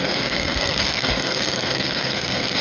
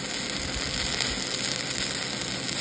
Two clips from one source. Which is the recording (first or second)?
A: second